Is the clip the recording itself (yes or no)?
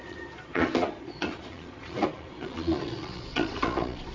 no